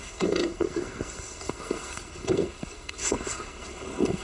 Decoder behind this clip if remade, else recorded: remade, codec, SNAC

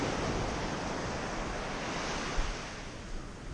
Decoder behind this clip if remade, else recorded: recorded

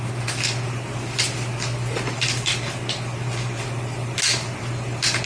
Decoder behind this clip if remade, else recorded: recorded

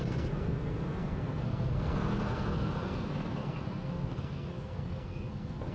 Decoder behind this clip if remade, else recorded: remade, codec, SNAC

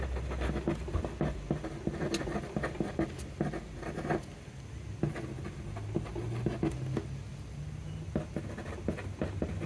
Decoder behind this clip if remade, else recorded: recorded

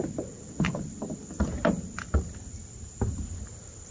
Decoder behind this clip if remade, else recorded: recorded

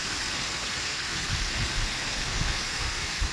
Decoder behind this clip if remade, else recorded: remade, codec, SNAC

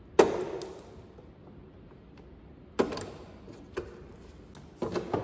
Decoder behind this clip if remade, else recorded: recorded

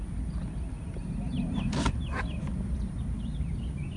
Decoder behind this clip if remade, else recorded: recorded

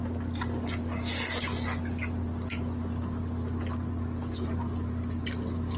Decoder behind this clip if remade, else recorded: recorded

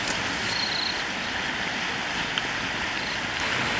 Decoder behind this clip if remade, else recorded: recorded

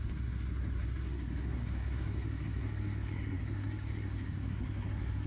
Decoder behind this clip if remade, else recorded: remade, codec, SNAC